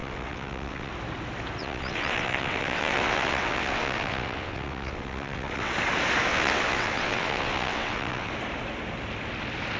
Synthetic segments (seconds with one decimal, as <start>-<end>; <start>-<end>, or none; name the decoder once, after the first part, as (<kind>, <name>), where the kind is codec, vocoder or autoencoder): 0.0-0.9 (vocoder, WaveNeXt); 1.6-5.7; 6.3-8.3